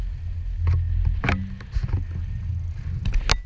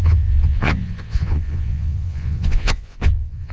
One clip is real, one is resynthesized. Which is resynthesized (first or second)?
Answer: second